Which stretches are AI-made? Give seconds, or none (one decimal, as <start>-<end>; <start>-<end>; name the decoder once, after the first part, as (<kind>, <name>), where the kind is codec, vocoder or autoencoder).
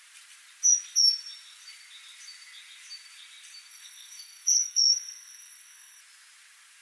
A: 3.7-6.0 (codec, SNAC)